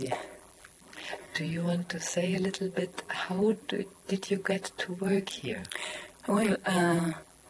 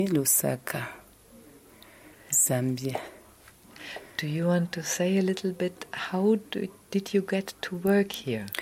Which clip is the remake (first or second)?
first